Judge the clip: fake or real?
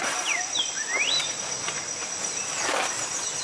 fake